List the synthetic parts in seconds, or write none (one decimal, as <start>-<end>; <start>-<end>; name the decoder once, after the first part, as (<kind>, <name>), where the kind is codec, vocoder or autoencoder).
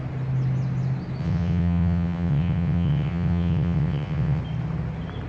1.2-4.4 (vocoder, WaveNeXt)